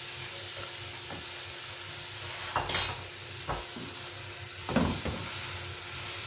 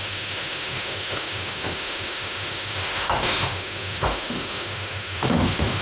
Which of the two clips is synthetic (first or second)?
second